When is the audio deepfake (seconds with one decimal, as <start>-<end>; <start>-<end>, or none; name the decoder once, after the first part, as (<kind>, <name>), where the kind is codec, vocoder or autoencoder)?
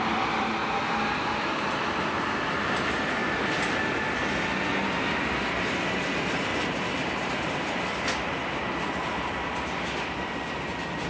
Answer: 0.0-0.6 (vocoder, BigVGAN v2); 1.4-3.2; 5.8-6.5; 7.3-11.1